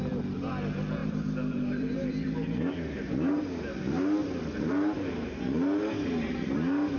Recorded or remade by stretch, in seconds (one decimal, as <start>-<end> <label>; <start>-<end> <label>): 0.0-1.0 recorded; 1.0-2.6 remade; 2.6-4.2 recorded; 4.2-4.7 remade; 4.7-7.0 recorded